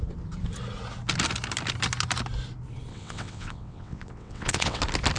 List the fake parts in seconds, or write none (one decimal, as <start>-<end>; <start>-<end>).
2.9-4.8